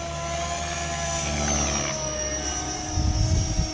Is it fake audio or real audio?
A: real